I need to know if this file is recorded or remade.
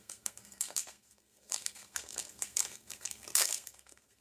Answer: remade